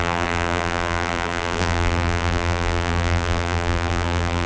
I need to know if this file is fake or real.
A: fake